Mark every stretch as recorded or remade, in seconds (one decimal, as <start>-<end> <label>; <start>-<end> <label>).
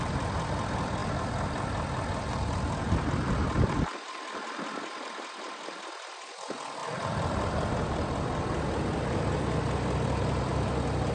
0.0-11.1 recorded